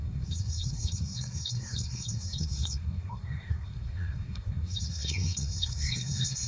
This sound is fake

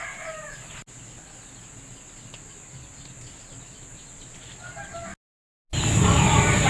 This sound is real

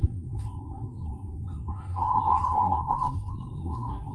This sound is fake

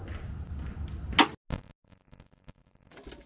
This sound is real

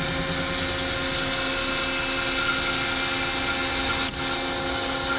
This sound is real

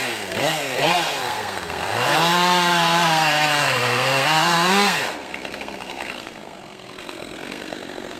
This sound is fake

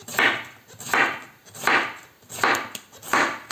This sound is real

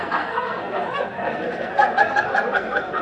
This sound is fake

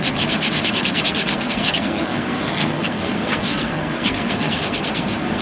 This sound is fake